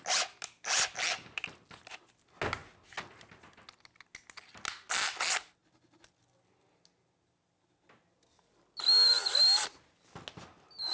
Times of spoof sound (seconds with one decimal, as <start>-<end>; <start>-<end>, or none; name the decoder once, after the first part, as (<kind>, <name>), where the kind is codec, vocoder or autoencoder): none